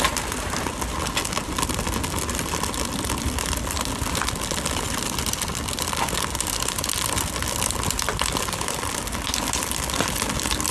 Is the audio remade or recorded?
recorded